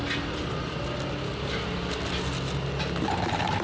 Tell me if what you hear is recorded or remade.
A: recorded